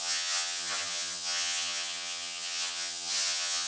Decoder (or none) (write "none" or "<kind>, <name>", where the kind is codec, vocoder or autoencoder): vocoder, HiFi-GAN